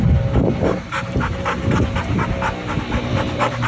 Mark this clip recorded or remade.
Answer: recorded